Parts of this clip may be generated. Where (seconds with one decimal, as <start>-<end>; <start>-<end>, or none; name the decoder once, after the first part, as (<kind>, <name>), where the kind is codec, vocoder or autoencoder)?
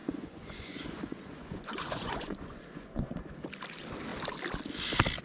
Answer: 0.0-3.1 (vocoder, Vocos)